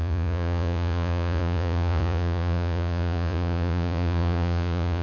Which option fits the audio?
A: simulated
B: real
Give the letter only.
A